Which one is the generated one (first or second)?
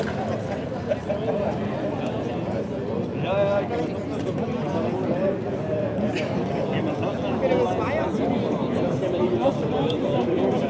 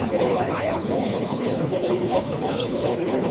second